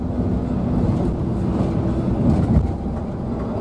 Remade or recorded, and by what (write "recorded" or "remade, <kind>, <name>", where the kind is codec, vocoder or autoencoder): recorded